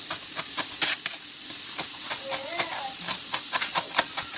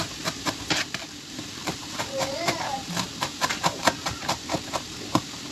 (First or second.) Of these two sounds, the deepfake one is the second